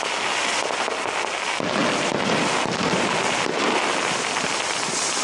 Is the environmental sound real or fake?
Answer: real